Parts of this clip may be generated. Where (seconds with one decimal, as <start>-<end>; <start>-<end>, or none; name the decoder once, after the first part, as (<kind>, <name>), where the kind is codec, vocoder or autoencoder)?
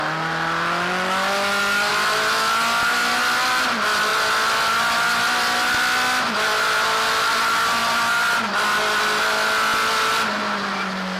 none